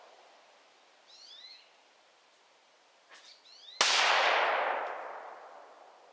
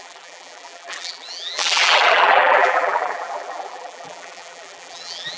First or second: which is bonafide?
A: first